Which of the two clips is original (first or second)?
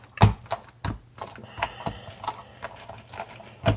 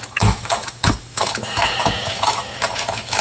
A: first